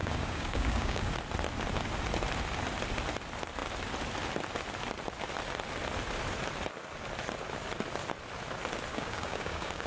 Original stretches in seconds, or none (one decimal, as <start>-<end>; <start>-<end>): 1.1-8.9